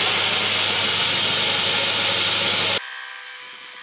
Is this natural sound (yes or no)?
yes